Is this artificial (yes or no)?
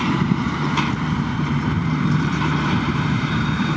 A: yes